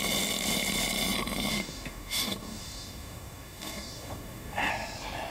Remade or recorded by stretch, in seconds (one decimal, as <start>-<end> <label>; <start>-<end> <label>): 0.0-1.5 recorded; 1.5-4.7 remade; 4.7-5.3 recorded